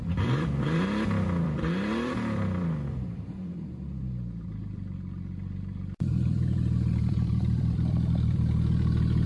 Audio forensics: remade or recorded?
remade